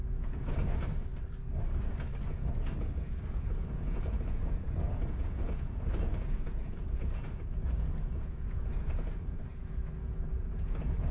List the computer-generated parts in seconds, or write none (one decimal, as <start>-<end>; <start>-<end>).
0.0-1.1; 2.3-11.1